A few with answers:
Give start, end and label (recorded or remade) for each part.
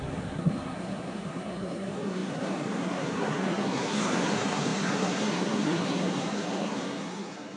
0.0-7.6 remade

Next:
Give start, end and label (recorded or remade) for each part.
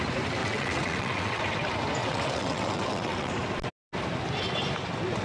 0.0-0.4 recorded; 0.4-1.4 remade; 1.4-2.0 recorded; 2.0-3.3 remade; 3.3-5.2 recorded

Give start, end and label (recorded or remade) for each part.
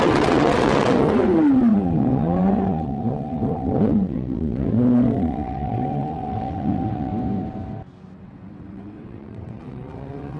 0.0-7.1 remade; 7.1-8.2 recorded; 8.2-10.4 remade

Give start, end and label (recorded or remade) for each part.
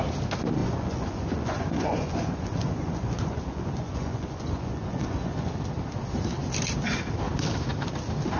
0.0-0.6 recorded; 0.6-5.5 remade; 5.5-8.4 recorded